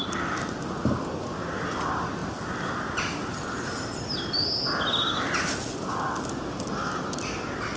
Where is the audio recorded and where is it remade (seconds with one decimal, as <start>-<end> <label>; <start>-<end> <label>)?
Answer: 0.0-7.8 recorded